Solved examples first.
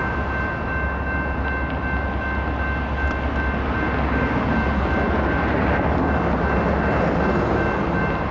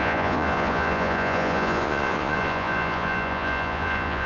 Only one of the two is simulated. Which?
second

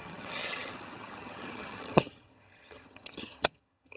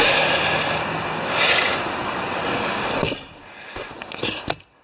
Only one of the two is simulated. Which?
first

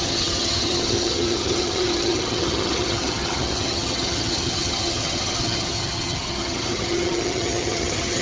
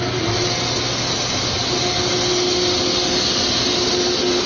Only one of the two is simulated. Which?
first